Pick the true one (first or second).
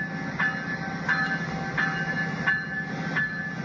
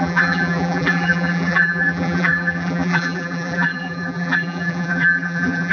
first